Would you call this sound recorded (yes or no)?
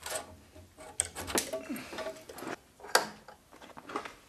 yes